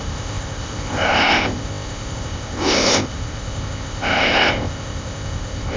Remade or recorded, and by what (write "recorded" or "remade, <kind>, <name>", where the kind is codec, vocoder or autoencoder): remade, codec, ZipCodec